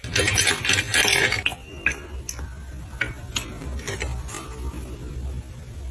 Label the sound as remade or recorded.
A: recorded